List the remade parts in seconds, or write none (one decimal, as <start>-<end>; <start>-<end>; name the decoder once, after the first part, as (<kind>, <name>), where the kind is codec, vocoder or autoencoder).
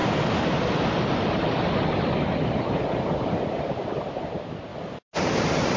3.5-4.7 (vocoder, BigVGAN v2); 5.2-5.8